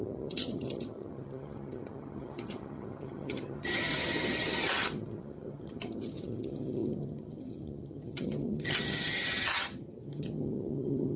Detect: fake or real fake